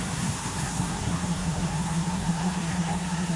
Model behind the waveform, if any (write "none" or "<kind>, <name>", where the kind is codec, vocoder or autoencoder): codec, SNAC